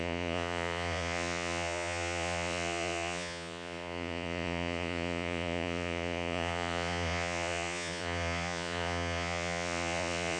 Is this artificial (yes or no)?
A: yes